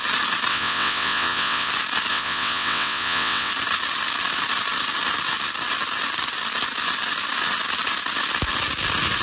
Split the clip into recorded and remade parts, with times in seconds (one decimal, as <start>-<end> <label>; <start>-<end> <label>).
0.0-0.5 recorded; 0.5-1.7 remade; 1.7-2.1 recorded; 2.1-3.5 remade; 3.5-9.2 recorded